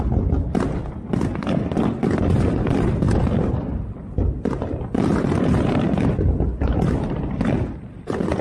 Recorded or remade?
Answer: remade